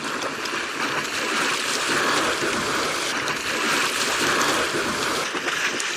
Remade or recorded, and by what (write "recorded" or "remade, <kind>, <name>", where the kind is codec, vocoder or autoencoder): recorded